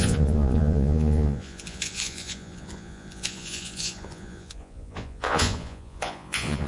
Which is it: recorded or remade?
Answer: remade